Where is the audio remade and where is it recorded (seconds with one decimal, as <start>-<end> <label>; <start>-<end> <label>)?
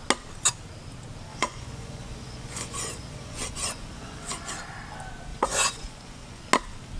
0.0-1.3 recorded; 1.3-4.5 remade; 4.5-5.3 recorded; 5.3-6.4 remade; 6.4-7.0 recorded